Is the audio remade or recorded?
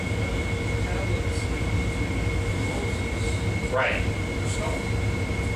recorded